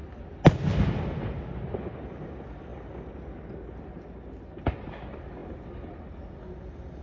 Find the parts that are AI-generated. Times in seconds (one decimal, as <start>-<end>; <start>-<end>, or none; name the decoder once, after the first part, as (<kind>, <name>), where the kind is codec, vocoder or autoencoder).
none